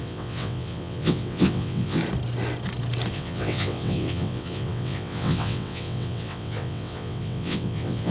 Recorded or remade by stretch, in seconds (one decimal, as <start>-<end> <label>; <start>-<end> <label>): 0.0-2.0 remade; 2.0-3.1 recorded; 3.1-8.1 remade